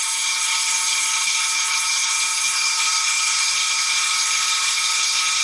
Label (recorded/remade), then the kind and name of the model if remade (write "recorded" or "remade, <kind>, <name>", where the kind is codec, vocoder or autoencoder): remade, codec, HILCodec